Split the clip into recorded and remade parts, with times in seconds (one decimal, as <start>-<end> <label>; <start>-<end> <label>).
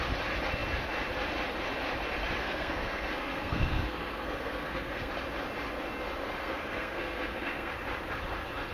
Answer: 0.0-2.4 recorded; 2.4-5.1 remade; 5.1-6.4 recorded; 6.4-7.7 remade; 7.7-8.7 recorded